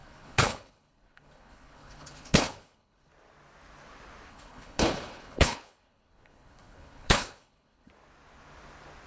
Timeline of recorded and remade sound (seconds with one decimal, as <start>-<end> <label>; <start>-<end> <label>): 0.0-3.1 remade; 3.1-4.3 recorded; 4.3-7.9 remade; 7.9-9.1 recorded